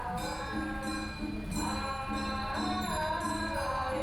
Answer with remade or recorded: recorded